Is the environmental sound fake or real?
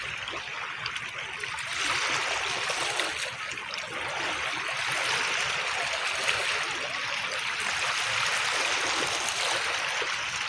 real